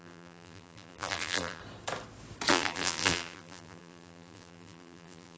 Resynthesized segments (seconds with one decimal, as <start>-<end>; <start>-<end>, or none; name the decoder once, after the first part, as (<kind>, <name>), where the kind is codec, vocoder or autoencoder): 0.0-1.6 (vocoder, BigVGAN v2); 2.5-5.4